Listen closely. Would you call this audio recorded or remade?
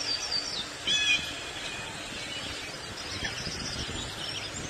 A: recorded